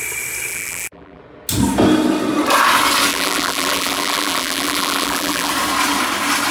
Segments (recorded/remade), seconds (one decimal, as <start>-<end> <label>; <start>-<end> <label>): 0.0-0.5 recorded; 0.5-1.2 remade; 1.2-3.1 recorded; 3.1-5.5 remade; 5.5-6.5 recorded